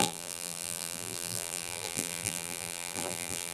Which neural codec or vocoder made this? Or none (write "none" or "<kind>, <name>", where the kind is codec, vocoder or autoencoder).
vocoder, BigVGAN v2